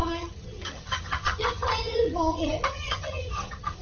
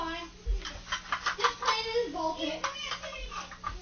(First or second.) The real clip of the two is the second